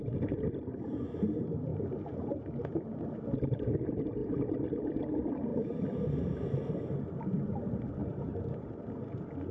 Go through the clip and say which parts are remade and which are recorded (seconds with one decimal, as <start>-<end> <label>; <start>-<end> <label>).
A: 0.0-1.7 recorded; 1.7-3.2 remade; 3.2-5.5 recorded; 5.5-6.7 remade; 6.7-8.0 recorded; 8.0-8.8 remade; 8.8-9.5 recorded